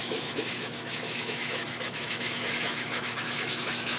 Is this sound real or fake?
fake